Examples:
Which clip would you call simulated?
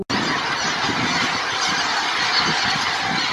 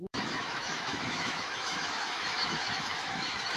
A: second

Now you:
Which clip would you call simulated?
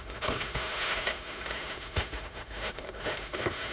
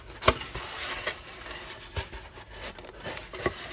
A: first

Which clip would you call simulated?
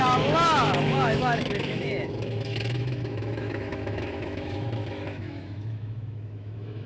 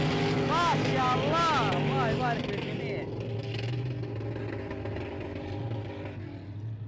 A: first